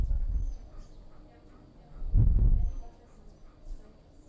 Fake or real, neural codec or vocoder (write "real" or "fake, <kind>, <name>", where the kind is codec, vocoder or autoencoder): real